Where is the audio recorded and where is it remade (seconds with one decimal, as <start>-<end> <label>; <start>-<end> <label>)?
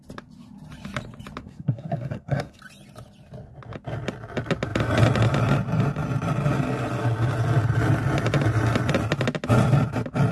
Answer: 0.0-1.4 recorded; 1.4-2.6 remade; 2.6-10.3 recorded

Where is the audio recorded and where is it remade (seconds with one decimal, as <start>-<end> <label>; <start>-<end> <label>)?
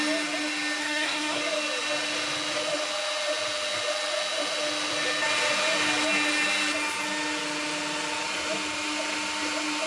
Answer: 0.0-0.8 recorded; 0.8-1.4 remade; 1.4-9.9 recorded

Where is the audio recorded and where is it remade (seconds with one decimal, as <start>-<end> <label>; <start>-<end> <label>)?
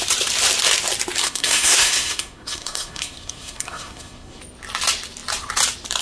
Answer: 0.0-1.2 recorded; 1.2-4.4 remade; 4.4-6.0 recorded